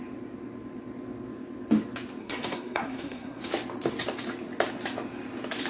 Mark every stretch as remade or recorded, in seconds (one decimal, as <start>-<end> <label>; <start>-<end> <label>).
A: 0.0-2.2 recorded; 2.2-3.4 remade; 3.4-5.7 recorded